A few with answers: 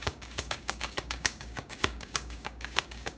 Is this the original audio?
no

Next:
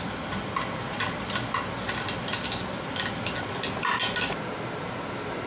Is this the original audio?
yes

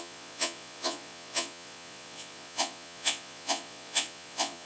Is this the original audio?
no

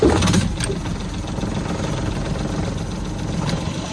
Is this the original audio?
yes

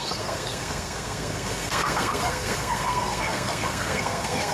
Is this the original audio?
no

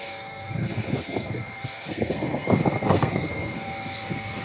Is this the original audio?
no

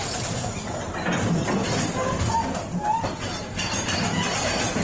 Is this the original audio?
no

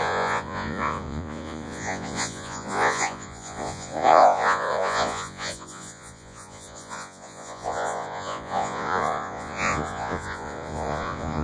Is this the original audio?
no